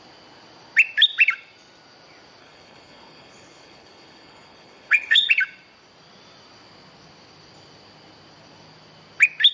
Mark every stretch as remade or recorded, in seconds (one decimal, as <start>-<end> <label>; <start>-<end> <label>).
0.0-2.4 recorded; 2.4-5.3 remade; 5.3-9.5 recorded